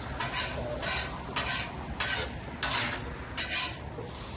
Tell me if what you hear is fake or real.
real